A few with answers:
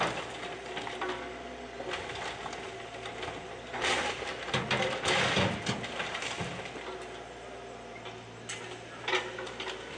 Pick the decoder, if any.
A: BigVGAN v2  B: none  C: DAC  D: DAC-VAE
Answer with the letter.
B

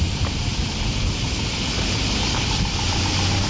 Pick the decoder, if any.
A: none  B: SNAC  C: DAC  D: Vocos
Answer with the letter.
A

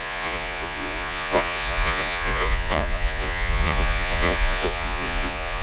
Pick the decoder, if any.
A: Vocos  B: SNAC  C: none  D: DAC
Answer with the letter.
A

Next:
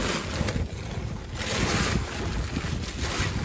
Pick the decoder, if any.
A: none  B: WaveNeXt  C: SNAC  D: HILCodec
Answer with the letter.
A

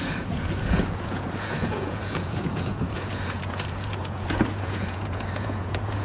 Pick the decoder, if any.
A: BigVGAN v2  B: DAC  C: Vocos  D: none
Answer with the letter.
C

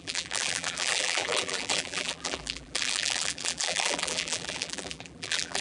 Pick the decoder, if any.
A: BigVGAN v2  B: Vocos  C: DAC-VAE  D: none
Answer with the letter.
A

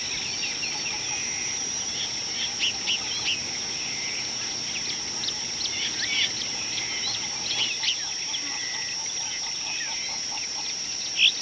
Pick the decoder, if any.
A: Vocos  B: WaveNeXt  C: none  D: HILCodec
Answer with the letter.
C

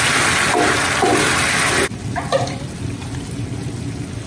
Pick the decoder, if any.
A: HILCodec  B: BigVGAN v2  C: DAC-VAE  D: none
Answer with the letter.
D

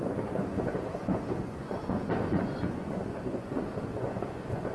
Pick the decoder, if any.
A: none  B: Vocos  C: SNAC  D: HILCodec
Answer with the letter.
B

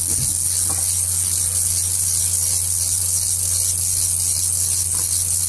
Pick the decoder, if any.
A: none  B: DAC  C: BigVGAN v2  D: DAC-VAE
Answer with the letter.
A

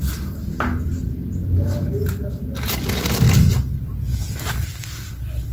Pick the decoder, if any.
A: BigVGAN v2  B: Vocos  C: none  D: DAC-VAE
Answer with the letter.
C